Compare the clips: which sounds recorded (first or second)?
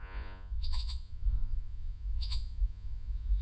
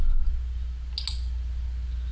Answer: second